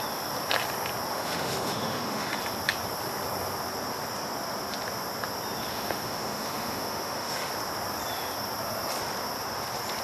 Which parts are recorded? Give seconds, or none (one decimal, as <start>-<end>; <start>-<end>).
0.0-1.1; 2.3-5.7; 7.5-10.0